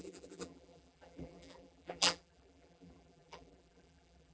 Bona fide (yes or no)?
no